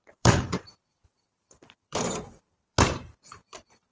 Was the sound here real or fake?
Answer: fake